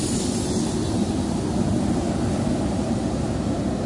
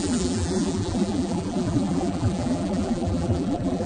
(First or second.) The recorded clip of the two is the first